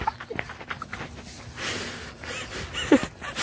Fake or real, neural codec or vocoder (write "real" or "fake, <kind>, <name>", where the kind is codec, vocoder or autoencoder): real